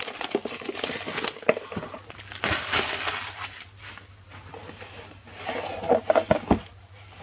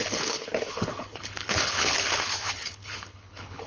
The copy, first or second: second